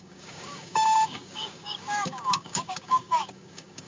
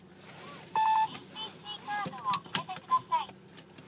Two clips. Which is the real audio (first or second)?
second